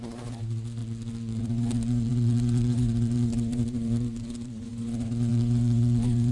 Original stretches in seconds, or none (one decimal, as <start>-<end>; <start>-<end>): 0.8-1.4

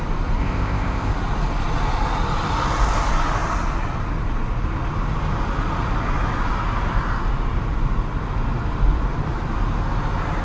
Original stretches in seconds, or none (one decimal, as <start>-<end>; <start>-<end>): 0.0-0.4; 1.1-10.4

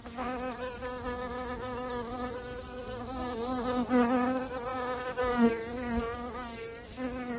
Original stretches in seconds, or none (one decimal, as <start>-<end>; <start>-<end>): 0.0-7.4

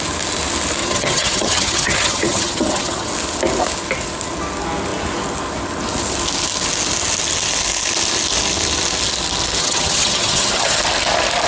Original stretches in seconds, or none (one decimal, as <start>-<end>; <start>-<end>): 0.0-0.8; 3.1-9.6; 10.8-11.5

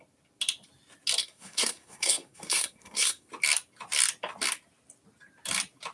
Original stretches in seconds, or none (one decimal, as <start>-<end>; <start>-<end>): 0.0-1.2; 3.3-5.9

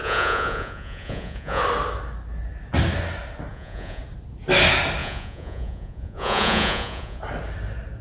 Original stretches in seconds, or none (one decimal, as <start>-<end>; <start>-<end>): 1.6-3.5; 4.0-5.0; 7.2-8.0

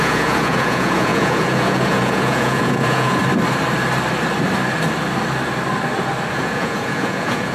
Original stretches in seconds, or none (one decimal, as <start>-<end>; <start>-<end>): 3.2-6.3